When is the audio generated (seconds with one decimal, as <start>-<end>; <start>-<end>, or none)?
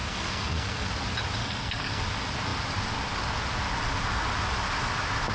0.0-0.9; 1.4-2.0